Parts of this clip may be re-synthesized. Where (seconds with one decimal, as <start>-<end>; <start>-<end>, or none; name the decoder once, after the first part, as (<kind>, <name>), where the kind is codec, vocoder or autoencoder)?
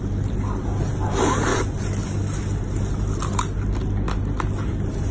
none